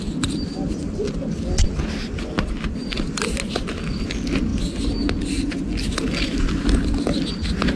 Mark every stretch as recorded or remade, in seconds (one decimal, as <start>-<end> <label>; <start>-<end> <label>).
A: 0.0-7.8 recorded